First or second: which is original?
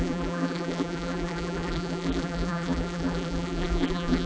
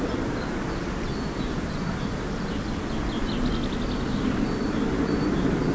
second